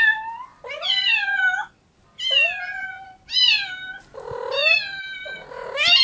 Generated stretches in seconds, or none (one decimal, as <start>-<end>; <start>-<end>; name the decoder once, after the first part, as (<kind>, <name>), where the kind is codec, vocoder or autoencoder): none